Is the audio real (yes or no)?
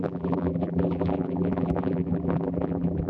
no